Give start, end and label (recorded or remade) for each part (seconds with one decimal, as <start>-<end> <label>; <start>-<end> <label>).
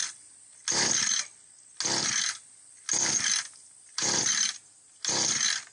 0.0-5.7 recorded